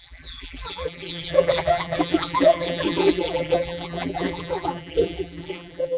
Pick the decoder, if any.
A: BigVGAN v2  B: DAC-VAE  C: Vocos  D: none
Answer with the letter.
A